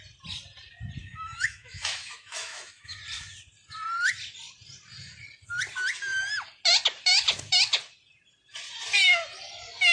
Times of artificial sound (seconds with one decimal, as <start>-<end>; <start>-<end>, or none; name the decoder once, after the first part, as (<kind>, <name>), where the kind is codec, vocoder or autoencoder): 1.0-3.0 (autoencoder, DAC-VAE)